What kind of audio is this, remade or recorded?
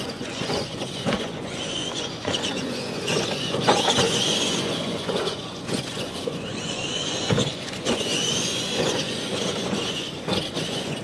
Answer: remade